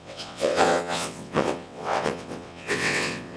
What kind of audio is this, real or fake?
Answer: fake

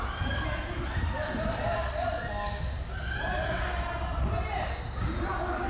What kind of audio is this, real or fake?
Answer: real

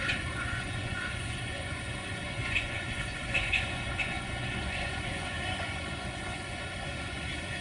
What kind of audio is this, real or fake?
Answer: fake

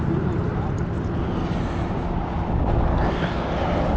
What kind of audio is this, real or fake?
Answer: real